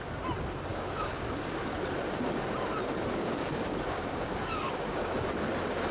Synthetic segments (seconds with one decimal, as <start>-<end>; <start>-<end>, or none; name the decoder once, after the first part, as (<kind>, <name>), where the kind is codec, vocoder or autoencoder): 0.7-1.6 (codec, DAC); 3.2-5.0